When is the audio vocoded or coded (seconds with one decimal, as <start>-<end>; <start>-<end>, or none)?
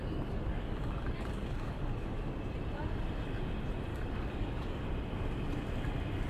0.0-2.2; 3.9-4.8